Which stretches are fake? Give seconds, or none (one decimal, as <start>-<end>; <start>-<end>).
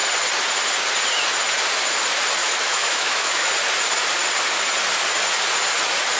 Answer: 2.4-3.5